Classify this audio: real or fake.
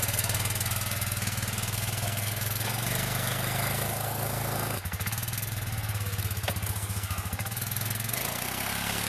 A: fake